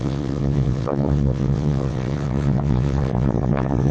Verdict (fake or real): fake